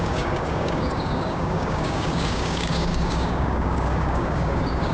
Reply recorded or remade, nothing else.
remade